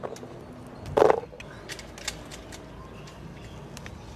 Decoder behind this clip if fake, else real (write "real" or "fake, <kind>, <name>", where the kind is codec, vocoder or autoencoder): real